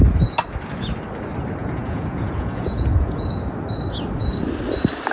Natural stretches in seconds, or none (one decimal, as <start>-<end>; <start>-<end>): 0.0-1.6; 3.3-5.1